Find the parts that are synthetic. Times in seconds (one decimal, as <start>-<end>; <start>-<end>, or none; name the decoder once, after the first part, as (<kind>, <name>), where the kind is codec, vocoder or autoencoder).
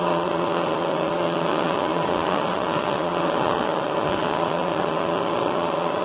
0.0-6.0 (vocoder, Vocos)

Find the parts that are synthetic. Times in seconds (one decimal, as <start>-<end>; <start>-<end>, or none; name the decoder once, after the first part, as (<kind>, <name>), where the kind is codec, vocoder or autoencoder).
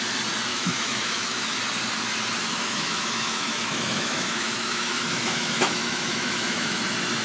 0.5-1.6 (autoencoder, DAC-VAE); 2.5-6.8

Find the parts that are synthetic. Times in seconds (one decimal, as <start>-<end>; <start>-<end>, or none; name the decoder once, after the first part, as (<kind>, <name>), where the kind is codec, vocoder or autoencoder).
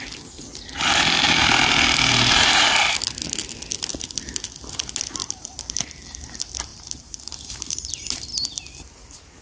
5.2-5.9 (vocoder, BigVGAN v2); 6.7-7.9